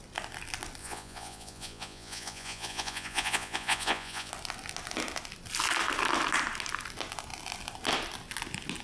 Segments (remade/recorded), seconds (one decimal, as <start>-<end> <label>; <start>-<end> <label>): 0.0-0.8 recorded; 0.8-4.3 remade; 4.3-8.8 recorded